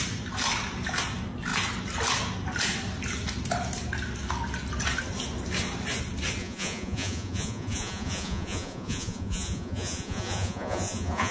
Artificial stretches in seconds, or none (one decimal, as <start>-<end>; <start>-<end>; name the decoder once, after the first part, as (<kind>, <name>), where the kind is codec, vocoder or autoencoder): 6.4-11.3 (vocoder, Vocos)